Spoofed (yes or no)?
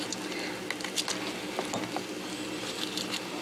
no